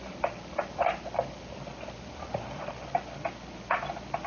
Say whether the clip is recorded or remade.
recorded